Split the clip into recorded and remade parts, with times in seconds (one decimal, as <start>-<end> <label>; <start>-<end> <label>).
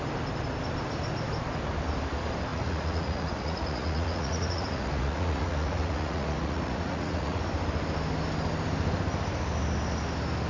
0.0-2.5 recorded; 2.5-7.4 remade; 7.4-10.5 recorded